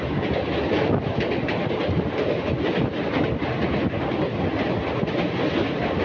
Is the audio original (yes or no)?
yes